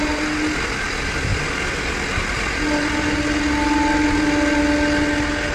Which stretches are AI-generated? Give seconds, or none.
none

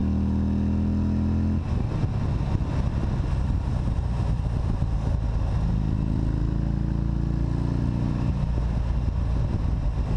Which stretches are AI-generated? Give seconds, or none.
none

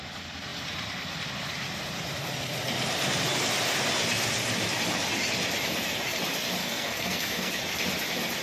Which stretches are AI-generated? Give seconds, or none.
6.6-7.6